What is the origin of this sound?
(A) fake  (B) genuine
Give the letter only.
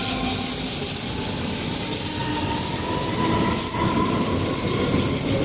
B